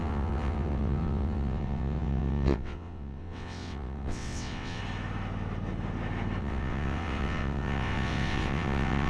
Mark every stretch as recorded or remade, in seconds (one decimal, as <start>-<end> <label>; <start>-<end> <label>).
0.0-4.8 remade; 4.8-6.4 recorded; 6.4-9.1 remade